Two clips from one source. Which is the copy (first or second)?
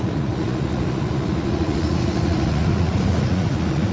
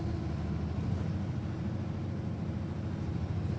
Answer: first